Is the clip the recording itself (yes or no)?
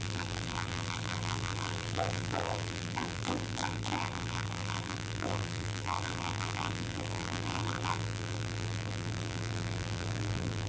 no